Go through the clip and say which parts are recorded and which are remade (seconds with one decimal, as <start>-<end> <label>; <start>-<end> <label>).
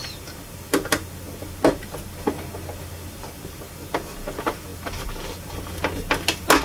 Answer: 0.0-6.6 recorded